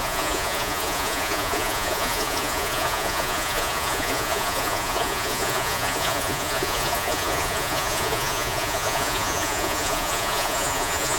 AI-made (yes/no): yes